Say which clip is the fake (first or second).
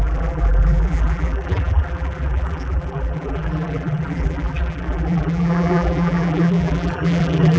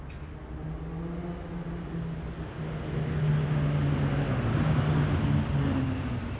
first